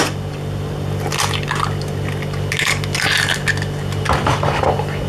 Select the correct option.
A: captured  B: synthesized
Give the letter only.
A